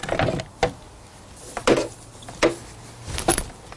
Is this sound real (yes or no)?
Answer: yes